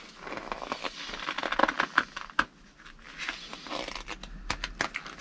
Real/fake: real